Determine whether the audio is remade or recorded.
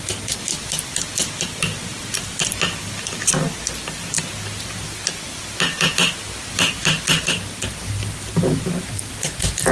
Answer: recorded